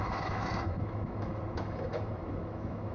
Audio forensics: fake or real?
fake